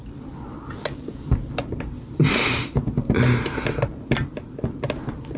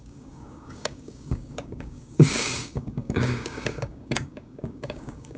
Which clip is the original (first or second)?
first